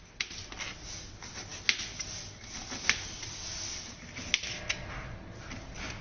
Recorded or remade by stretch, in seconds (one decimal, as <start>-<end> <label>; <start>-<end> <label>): 0.0-6.0 recorded